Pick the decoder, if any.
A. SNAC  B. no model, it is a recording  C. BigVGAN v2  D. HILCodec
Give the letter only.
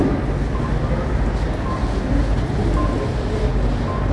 B